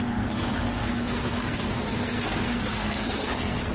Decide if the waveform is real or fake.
fake